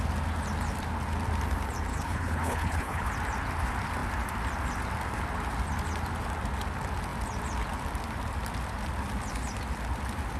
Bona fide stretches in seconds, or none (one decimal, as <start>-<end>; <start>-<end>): 0.0-1.9; 3.1-10.4